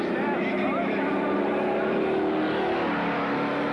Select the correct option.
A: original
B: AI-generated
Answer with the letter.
A